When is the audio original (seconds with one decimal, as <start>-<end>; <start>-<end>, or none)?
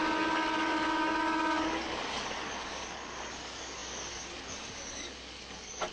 none